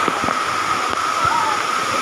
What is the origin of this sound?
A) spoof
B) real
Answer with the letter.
B